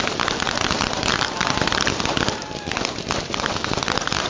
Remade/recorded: remade